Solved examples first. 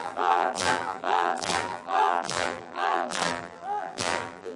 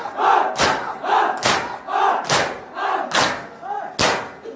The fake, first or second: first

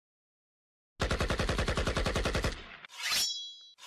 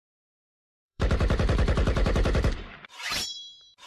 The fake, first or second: second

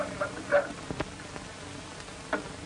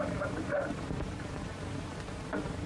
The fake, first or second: second